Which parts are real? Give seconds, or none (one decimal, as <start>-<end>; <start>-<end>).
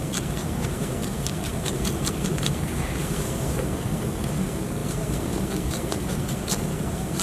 none